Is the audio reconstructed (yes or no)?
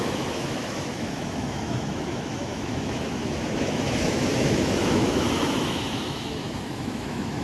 yes